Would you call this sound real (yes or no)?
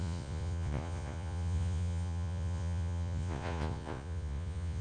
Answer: no